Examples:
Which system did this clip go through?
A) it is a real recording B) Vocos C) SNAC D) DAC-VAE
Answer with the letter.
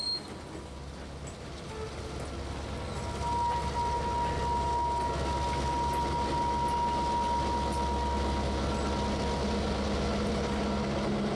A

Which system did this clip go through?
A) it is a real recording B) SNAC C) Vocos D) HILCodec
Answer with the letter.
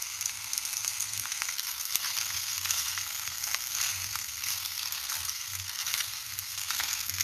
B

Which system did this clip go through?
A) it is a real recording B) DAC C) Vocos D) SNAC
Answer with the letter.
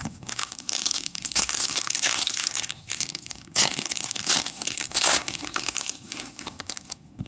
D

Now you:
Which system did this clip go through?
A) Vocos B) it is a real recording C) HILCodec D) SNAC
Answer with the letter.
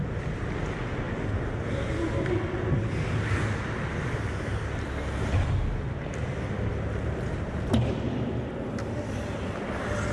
B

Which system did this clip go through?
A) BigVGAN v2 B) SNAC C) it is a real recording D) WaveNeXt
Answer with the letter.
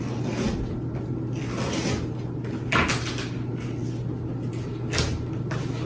C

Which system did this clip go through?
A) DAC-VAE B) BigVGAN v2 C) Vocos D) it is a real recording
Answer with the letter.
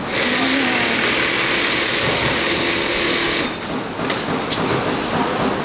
D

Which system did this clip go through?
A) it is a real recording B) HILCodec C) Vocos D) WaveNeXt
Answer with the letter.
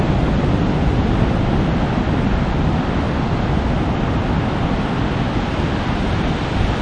A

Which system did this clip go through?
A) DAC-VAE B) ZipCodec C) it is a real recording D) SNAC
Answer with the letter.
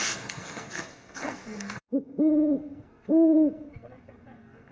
D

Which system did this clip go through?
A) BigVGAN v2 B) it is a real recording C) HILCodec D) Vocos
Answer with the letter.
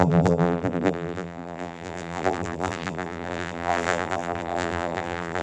A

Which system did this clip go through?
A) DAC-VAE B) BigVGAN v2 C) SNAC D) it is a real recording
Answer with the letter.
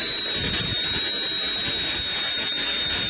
D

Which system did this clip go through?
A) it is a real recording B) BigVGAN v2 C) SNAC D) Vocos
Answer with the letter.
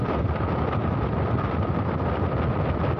A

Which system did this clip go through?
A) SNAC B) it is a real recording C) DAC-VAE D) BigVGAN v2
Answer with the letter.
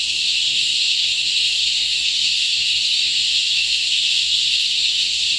A